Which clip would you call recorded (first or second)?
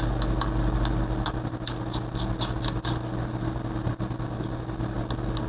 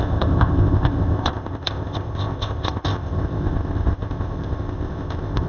first